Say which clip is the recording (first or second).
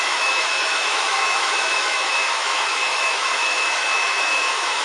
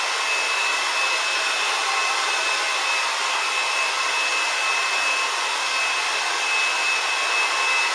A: second